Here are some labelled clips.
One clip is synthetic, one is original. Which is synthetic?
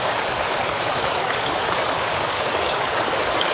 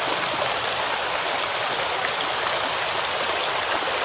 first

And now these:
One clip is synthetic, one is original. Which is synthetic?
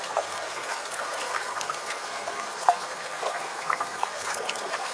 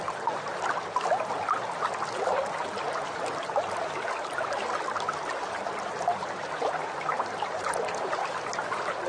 first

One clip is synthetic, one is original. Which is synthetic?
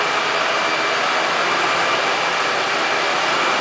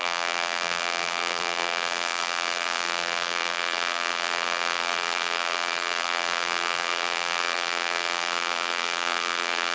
second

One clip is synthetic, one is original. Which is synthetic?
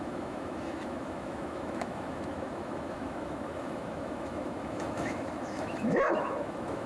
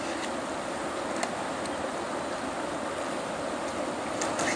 first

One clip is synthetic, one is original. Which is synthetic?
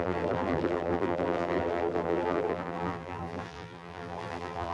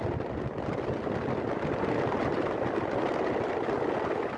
first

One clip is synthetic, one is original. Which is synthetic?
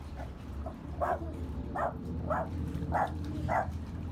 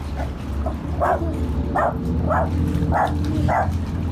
first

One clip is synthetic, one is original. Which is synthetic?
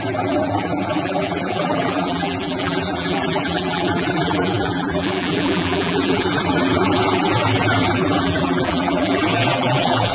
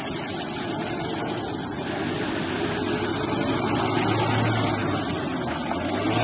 first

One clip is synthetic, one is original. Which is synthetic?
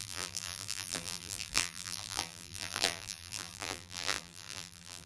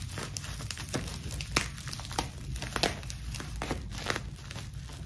first